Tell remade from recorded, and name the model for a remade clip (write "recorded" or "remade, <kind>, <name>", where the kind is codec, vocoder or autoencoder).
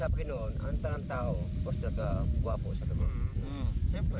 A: remade, vocoder, BigVGAN v2